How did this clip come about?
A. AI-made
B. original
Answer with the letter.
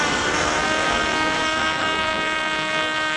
A